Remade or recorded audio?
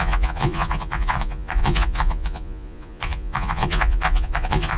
remade